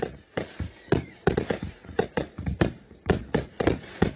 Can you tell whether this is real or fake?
fake